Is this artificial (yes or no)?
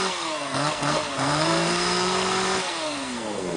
yes